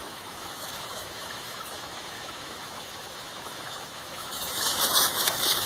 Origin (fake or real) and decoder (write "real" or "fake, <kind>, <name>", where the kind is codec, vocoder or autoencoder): fake, autoencoder, DAC-VAE